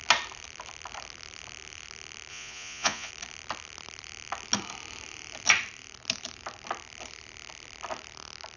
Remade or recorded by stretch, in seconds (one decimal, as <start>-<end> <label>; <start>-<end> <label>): 0.0-2.3 recorded; 2.3-3.1 remade; 3.1-8.6 recorded